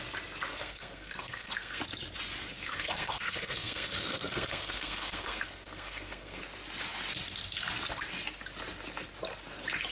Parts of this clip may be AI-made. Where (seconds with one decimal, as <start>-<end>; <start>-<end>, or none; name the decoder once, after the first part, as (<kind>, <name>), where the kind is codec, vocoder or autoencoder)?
0.5-1.8 (codec, SNAC); 2.4-6.4